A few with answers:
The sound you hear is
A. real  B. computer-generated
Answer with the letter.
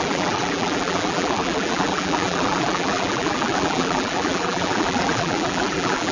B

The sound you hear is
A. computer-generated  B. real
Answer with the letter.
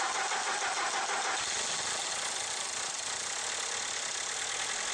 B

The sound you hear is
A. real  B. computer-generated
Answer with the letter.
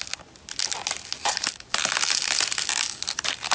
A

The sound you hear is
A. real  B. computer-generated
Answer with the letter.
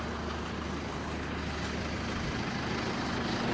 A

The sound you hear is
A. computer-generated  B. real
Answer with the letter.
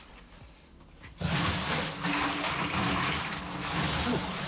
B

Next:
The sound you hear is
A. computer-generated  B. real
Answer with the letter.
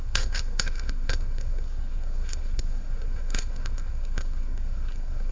A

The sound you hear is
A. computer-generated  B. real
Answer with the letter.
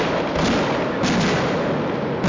B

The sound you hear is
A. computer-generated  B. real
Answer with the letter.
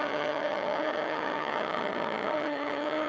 A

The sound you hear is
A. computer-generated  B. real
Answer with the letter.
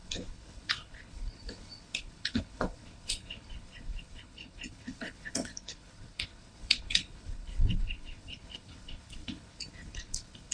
A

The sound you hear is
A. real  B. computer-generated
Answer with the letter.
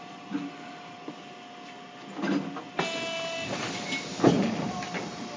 A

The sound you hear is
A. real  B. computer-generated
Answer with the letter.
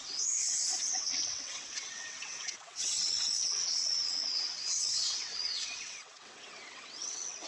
B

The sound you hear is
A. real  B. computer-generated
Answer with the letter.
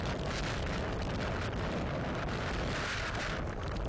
B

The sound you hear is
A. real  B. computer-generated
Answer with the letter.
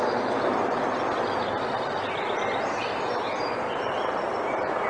A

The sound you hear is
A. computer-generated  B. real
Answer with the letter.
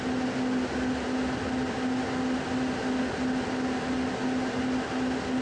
B